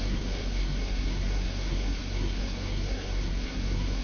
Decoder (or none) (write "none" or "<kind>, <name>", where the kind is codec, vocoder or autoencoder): codec, SNAC